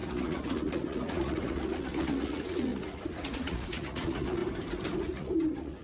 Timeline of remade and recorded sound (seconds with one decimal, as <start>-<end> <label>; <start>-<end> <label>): 0.0-4.4 remade; 4.4-5.0 recorded; 5.0-5.8 remade